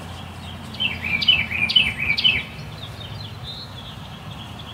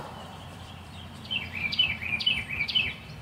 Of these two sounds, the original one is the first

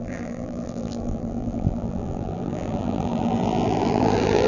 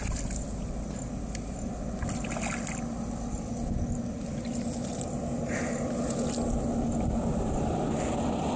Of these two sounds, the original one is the second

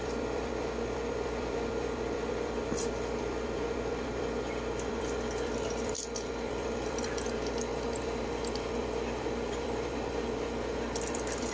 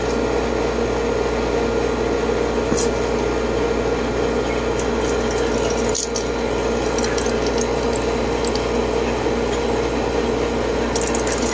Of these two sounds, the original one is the second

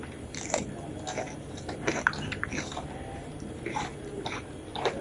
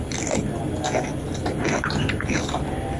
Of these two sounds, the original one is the second